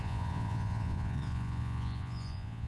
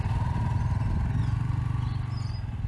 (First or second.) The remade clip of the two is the first